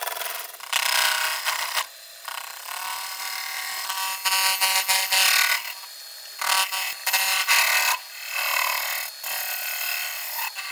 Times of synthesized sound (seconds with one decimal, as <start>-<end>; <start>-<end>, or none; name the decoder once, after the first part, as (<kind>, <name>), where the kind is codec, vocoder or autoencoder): 2.9-3.7 (vocoder, BigVGAN v2)